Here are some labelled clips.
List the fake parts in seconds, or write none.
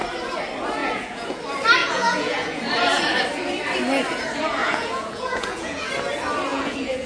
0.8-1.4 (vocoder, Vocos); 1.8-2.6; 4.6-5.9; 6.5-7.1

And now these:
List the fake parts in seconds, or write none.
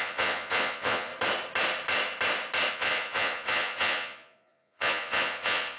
0.0-1.1 (vocoder, Vocos); 2.7-5.8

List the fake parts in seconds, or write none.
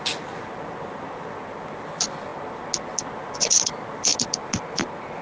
none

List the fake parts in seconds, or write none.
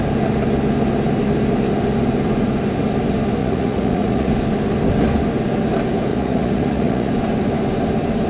3.4-4.3 (vocoder, Vocos); 6.1-7.1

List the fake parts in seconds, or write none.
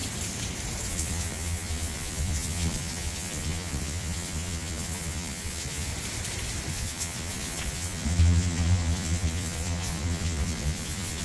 0.9-5.9 (vocoder, Vocos); 6.7-11.2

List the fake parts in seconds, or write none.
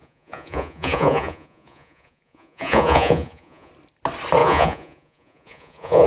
0.0-3.7 (vocoder, Vocos); 4.4-6.1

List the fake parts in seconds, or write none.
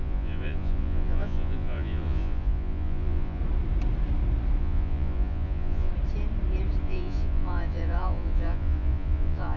0.0-3.4 (vocoder, Vocos); 4.6-5.9; 6.8-9.6